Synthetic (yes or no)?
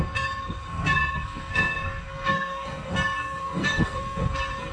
yes